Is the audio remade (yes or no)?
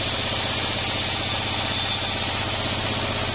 no